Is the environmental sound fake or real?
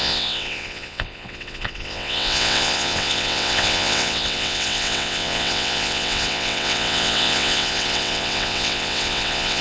fake